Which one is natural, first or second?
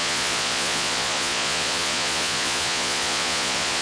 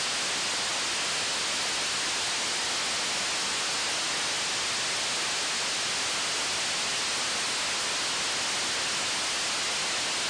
second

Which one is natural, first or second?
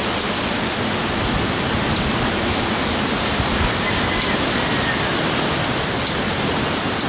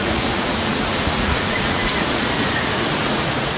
first